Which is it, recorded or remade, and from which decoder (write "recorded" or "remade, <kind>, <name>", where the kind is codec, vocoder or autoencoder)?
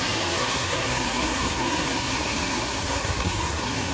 remade, codec, SNAC